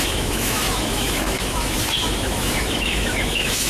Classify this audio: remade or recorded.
remade